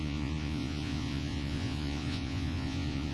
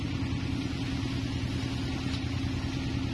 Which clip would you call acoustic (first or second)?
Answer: second